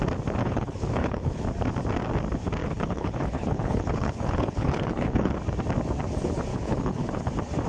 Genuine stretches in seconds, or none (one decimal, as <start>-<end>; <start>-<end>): 0.0-0.4; 1.4-2.6; 5.3-6.5; 7.3-7.7